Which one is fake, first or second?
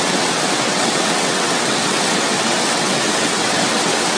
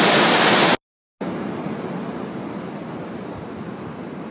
first